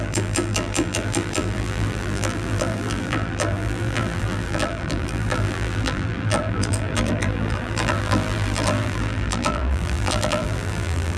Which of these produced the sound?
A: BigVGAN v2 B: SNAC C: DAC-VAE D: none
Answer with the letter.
A